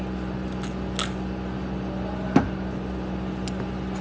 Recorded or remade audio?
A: recorded